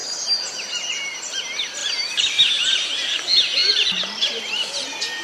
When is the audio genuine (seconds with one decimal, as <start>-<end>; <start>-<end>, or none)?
1.4-1.8; 2.9-3.6; 4.7-5.2